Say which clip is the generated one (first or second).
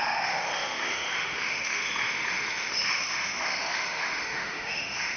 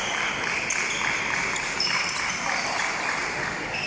first